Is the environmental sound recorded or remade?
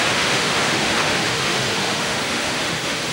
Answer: remade